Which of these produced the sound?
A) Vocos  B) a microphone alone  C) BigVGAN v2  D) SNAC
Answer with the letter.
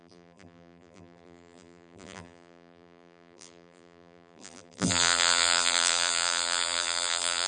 C